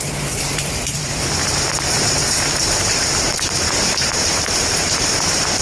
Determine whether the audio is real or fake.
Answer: fake